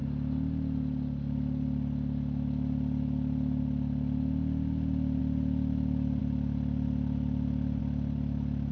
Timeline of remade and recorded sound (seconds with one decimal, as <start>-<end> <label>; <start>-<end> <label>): 0.0-8.7 recorded